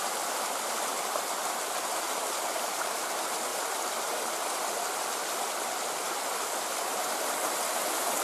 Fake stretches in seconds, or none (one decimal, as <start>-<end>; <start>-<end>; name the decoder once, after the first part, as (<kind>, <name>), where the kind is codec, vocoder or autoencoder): none